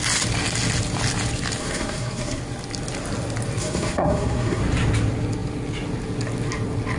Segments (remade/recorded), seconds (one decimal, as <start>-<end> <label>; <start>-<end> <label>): 0.0-1.6 recorded; 1.6-2.4 remade; 2.4-3.6 recorded; 3.6-4.6 remade; 4.6-7.0 recorded